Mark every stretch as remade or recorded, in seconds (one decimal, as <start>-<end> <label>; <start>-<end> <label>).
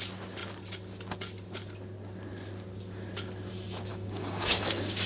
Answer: 0.0-3.9 recorded; 3.9-5.1 remade